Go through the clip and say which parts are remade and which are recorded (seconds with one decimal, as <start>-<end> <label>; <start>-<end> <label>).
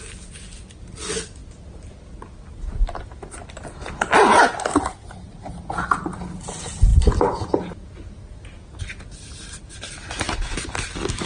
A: 0.0-11.3 recorded